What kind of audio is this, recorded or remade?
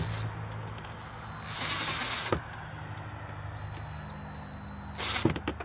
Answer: recorded